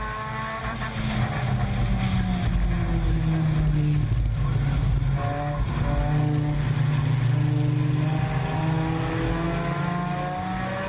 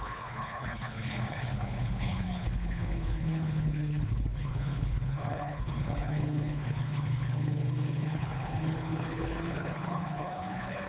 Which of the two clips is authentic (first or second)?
first